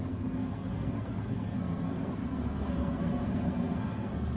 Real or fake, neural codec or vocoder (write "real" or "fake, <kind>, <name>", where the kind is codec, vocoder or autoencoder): fake, codec, SNAC